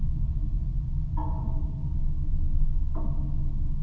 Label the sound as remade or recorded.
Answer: recorded